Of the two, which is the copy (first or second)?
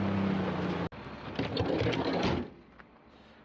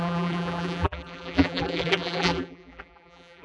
second